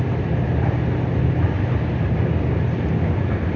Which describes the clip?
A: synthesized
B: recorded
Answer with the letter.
B